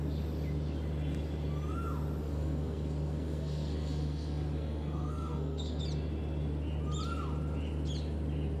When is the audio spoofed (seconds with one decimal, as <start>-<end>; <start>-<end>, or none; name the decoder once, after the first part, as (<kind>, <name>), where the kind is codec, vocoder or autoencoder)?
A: 2.2-5.8 (codec, SNAC)